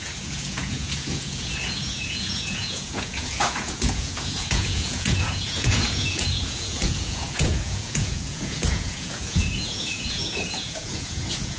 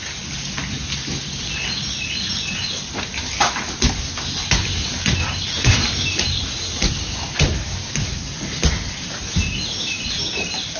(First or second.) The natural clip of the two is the second